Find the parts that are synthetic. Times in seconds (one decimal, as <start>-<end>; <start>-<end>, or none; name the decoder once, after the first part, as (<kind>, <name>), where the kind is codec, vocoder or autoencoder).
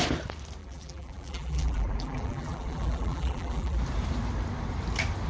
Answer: 0.6-3.8 (vocoder, BigVGAN v2)